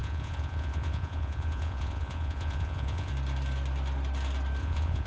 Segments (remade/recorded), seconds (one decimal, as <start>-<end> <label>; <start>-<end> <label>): 0.0-3.1 remade; 3.1-4.6 recorded; 4.6-5.1 remade